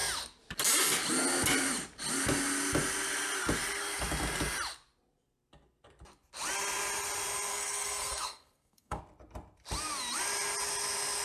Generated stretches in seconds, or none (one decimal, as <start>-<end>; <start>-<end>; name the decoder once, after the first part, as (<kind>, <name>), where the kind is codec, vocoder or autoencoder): 7.5-9.0 (codec, SNAC)